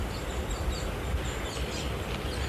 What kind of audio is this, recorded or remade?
recorded